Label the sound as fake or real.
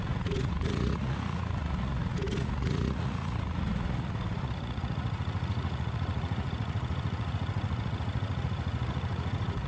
fake